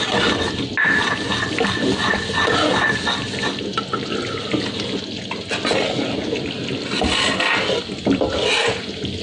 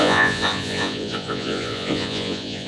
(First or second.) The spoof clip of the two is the second